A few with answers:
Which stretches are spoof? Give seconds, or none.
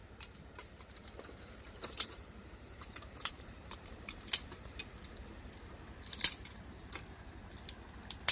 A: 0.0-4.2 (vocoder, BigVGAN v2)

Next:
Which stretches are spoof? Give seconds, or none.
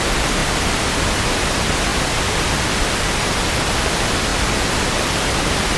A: 1.9-2.7 (vocoder, BigVGAN v2)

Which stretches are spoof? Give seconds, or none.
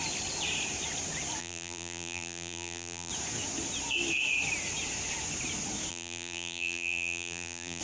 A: 1.4-3.1 (vocoder, BigVGAN v2); 5.9-7.8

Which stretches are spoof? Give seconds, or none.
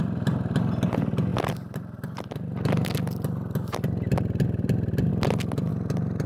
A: none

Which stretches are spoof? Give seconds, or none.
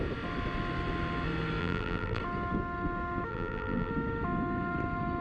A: 1.6-2.2 (vocoder, BigVGAN v2); 3.3-3.9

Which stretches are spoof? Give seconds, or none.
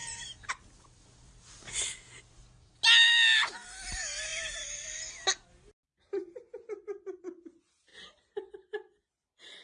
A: 0.0-0.5 (vocoder, BigVGAN v2)